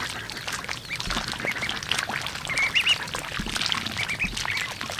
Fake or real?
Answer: real